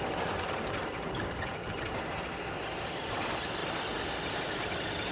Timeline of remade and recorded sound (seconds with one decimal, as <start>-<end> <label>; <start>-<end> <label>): 0.0-5.1 recorded